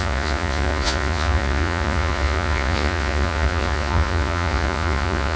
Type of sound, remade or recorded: remade